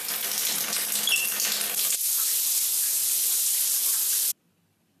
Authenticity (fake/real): real